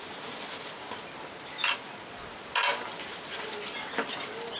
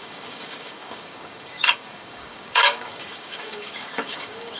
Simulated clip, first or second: second